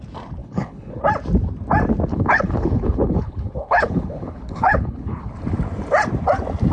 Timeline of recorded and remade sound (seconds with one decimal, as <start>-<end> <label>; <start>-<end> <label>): 0.0-0.4 recorded; 0.4-1.0 remade; 1.0-2.1 recorded; 2.1-5.3 remade; 5.3-6.7 recorded